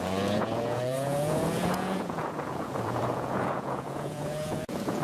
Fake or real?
fake